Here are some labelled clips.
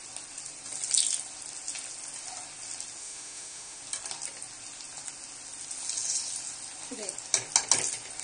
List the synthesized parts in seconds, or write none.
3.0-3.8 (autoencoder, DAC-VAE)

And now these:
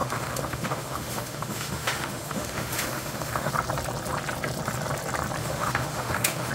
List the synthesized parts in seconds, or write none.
0.0-3.5 (autoencoder, DAC-VAE); 5.4-6.5

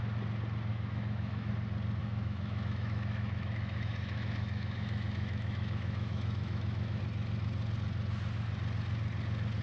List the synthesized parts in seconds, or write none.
0.7-1.5 (autoencoder, DAC-VAE); 2.0-7.0